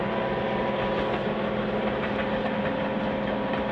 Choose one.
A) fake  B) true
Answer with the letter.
B